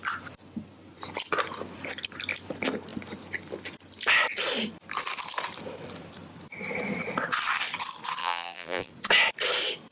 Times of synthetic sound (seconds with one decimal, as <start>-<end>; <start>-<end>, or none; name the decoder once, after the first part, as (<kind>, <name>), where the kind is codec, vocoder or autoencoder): 8.2-8.9 (vocoder, BigVGAN v2)